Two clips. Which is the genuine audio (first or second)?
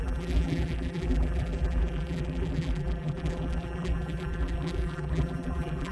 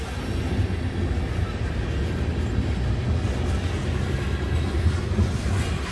second